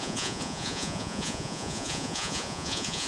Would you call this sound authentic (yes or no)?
no